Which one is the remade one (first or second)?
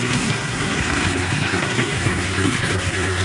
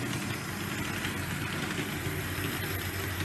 first